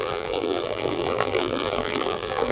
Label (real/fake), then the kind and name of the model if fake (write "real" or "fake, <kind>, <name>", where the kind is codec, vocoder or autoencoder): fake, vocoder, BigVGAN v2